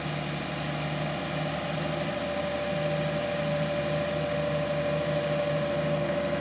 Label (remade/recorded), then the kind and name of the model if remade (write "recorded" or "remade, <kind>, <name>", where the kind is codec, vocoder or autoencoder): recorded